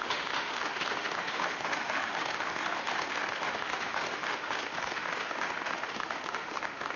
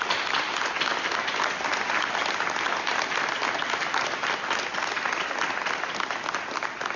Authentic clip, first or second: second